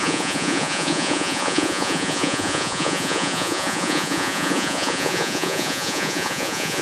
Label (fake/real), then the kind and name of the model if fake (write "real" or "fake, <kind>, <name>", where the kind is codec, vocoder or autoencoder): fake, vocoder, Vocos